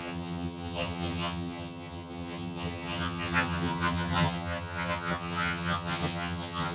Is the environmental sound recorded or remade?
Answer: remade